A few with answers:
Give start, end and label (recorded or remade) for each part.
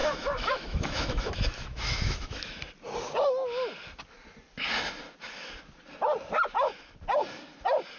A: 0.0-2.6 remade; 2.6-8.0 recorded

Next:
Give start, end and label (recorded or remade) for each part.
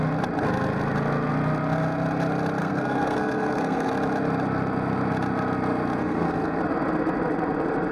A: 0.0-2.6 recorded; 2.6-3.9 remade; 3.9-6.0 recorded; 6.0-6.6 remade; 6.6-7.9 recorded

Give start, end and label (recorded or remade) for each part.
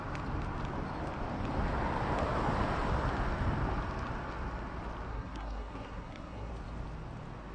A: 0.0-5.1 recorded; 5.1-6.5 remade; 6.5-7.5 recorded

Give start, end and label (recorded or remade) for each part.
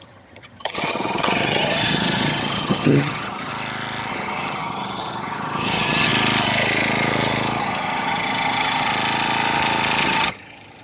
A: 0.0-3.5 remade; 3.5-4.1 recorded; 4.1-6.1 remade; 6.1-7.6 recorded; 7.6-8.9 remade; 8.9-10.0 recorded; 10.0-10.8 remade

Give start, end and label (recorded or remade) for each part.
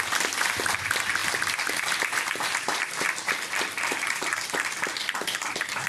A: 0.0-1.2 recorded; 1.2-4.7 remade; 4.7-5.9 recorded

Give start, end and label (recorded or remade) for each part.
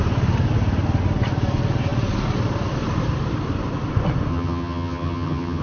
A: 0.0-4.3 recorded; 4.3-5.6 remade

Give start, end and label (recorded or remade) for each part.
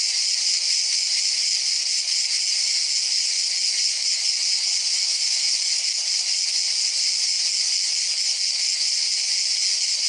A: 0.0-5.1 recorded; 5.1-5.6 remade; 5.6-10.1 recorded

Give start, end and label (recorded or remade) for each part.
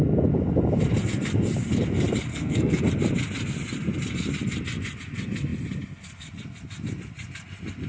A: 0.0-2.3 recorded; 2.3-2.8 remade; 2.8-7.9 recorded